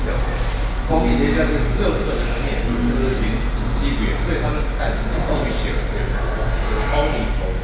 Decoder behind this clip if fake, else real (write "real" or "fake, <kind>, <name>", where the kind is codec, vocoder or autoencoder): real